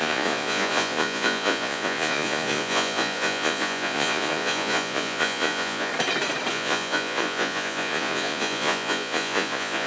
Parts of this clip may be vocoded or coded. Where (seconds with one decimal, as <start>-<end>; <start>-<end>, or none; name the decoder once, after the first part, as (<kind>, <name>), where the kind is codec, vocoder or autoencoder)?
0.0-5.9 (vocoder, Vocos); 6.5-9.9